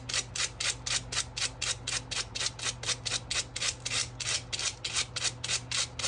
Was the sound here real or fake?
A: real